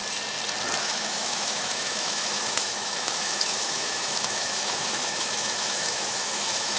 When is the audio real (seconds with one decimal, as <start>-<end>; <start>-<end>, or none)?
0.0-0.8